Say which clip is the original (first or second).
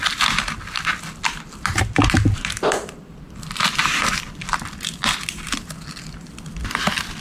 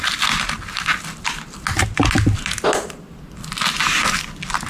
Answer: second